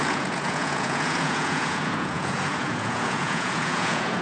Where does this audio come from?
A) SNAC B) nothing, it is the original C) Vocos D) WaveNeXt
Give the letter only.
C